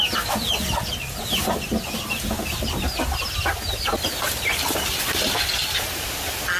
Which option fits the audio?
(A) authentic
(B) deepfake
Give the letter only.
A